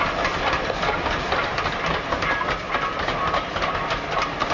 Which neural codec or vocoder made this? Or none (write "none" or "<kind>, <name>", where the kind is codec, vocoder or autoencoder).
none